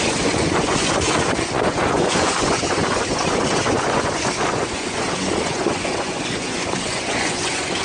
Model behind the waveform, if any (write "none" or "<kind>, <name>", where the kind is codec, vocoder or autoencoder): vocoder, Vocos